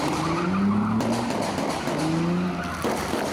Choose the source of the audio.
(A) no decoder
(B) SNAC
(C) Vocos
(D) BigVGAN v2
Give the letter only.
A